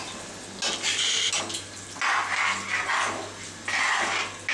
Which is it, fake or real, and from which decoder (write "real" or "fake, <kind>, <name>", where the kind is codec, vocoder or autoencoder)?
real